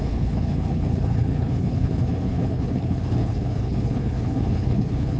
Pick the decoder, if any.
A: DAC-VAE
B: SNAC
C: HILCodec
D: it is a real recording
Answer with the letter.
C